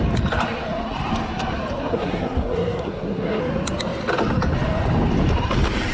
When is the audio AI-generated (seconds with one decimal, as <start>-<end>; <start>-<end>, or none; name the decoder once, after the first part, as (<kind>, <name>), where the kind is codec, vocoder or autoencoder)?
1.8-3.4 (codec, SNAC)

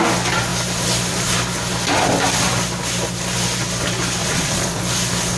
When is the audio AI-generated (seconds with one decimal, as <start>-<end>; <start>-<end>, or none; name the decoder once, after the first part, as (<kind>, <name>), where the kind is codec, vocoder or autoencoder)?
4.2-4.8 (vocoder, Vocos)

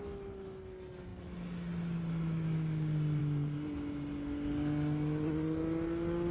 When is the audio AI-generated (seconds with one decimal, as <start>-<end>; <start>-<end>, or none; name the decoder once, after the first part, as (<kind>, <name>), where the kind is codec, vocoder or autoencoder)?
none

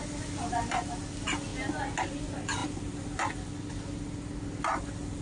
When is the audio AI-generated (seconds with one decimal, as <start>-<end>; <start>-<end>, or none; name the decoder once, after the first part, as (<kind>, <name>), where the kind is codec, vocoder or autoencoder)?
none

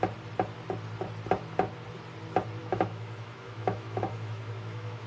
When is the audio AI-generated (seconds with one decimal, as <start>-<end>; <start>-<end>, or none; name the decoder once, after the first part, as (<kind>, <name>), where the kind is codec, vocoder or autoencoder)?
2.6-5.1 (autoencoder, DAC-VAE)

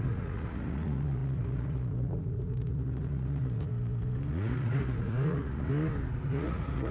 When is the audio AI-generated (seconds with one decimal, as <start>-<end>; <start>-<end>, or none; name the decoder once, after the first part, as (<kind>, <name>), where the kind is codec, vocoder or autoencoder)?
0.0-3.7 (vocoder, Vocos); 4.3-5.7; 6.2-6.9